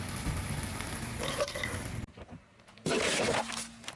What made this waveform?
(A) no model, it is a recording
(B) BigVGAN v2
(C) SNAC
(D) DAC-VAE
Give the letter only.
A